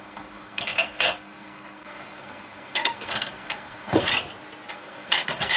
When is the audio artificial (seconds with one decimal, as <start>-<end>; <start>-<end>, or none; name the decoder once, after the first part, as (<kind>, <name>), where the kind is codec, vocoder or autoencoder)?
0.0-4.1 (codec, SNAC); 4.7-5.6